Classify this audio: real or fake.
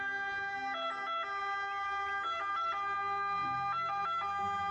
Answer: real